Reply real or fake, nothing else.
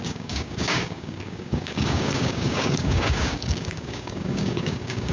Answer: fake